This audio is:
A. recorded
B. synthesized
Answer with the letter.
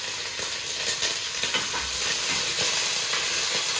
A